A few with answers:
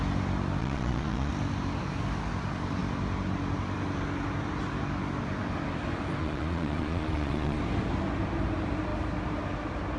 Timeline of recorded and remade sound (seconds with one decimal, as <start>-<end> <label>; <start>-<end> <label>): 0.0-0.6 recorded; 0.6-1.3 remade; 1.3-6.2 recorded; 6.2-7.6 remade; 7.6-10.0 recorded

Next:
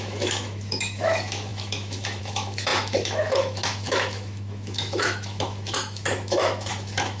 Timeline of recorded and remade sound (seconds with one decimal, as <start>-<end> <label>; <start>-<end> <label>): 0.0-7.2 remade

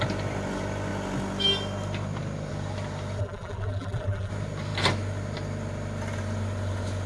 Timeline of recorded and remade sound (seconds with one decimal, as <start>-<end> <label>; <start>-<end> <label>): 0.0-3.2 recorded; 3.2-4.3 remade; 4.3-7.1 recorded

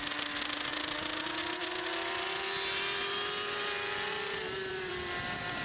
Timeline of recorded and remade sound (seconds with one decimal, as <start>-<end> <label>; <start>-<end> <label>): 0.0-4.7 recorded; 4.7-5.6 remade